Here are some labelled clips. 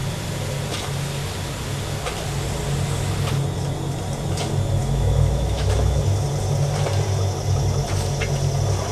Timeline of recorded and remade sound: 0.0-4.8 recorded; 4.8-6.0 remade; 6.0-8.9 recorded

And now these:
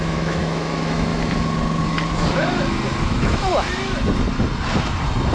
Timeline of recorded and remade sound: 0.0-1.1 remade; 1.1-3.0 recorded; 3.0-3.5 remade; 3.5-5.3 recorded

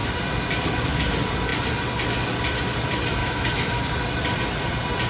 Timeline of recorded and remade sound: 0.0-3.2 recorded; 3.2-3.8 remade; 3.8-5.1 recorded